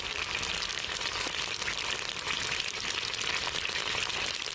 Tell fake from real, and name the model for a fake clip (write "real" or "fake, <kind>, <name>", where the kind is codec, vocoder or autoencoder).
real